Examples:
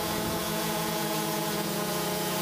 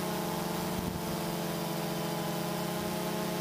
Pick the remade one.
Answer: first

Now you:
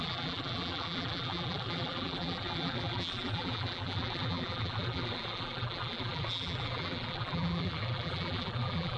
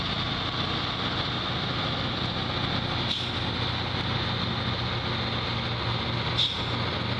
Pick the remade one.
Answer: first